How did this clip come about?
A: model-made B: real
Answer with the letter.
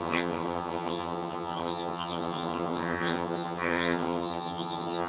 A